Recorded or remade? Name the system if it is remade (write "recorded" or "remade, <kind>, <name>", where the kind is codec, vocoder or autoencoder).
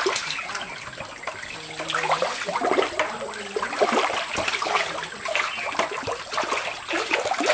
recorded